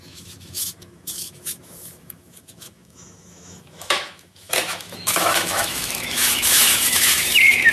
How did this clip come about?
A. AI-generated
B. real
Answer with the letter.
A